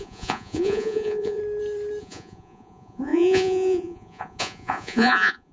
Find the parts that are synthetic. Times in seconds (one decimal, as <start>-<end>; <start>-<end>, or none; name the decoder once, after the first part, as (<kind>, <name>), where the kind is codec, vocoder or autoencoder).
0.0-1.4 (vocoder, Vocos); 2.0-5.5